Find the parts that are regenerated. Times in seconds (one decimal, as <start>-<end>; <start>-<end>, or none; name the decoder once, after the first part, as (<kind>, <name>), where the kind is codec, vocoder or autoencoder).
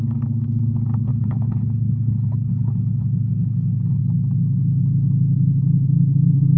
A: 1.1-4.0 (codec, HILCodec)